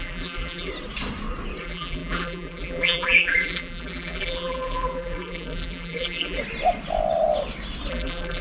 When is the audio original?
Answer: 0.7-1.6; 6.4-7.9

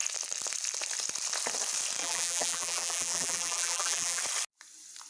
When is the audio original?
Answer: 0.0-2.0; 4.2-5.1

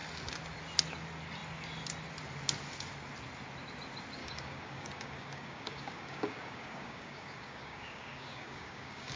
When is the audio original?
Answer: 0.0-4.2

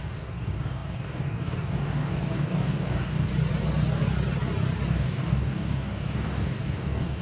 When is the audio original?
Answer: 3.3-4.9

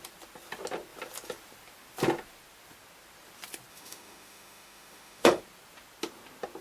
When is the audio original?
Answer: 0.0-3.7; 5.4-6.6

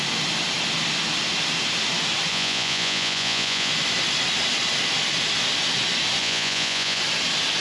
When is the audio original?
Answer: 0.0-2.3; 3.7-6.2; 7.0-7.6

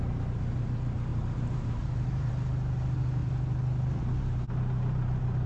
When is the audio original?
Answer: 0.0-1.1; 2.3-5.5